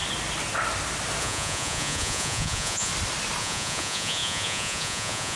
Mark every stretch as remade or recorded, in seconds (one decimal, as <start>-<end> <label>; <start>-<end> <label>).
0.0-1.2 recorded; 1.2-2.9 remade; 2.9-3.4 recorded; 3.4-5.4 remade